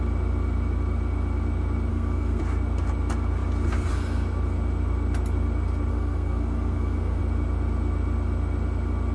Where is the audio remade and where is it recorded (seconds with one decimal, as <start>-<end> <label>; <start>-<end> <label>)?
0.0-1.9 recorded; 1.9-2.4 remade; 2.4-5.9 recorded; 5.9-7.2 remade; 7.2-9.1 recorded